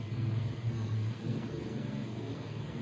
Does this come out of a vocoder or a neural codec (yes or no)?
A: yes